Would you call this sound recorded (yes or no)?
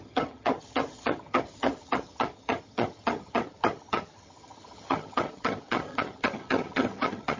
no